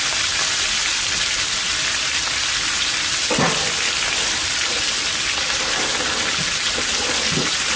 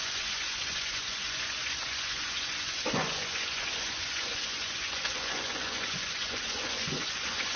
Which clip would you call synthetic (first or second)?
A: second